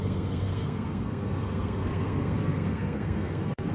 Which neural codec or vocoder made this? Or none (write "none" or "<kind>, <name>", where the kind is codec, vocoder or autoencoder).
codec, SNAC